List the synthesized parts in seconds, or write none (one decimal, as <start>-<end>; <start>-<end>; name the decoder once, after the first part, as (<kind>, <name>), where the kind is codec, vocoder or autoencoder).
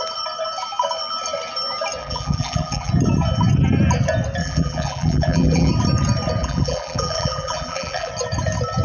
2.0-2.9 (vocoder, BigVGAN v2); 4.4-5.7; 6.4-8.1